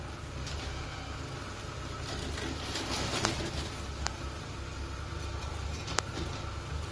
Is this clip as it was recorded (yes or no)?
yes